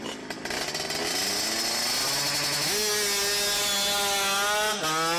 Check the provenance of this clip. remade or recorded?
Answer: recorded